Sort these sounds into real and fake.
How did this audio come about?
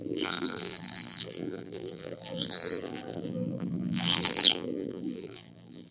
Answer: fake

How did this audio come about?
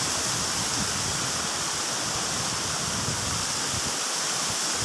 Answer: real